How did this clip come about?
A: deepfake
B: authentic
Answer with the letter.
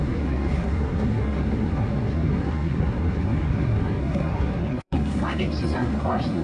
A